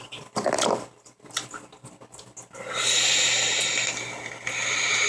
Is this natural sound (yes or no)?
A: yes